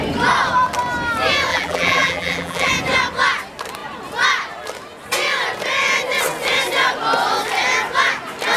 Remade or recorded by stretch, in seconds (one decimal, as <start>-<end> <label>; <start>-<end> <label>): 0.0-1.5 recorded; 1.5-2.7 remade; 2.7-8.6 recorded